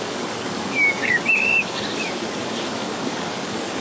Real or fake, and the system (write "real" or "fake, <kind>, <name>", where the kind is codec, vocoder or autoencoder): fake, codec, DAC